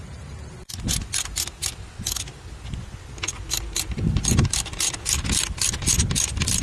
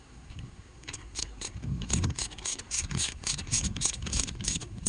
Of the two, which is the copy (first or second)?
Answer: second